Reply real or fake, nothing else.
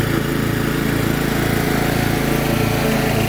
real